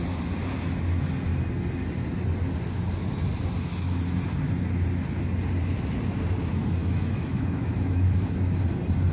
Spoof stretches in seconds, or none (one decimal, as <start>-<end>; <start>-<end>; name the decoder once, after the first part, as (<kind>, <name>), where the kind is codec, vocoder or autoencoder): 6.8-8.6 (autoencoder, DAC-VAE)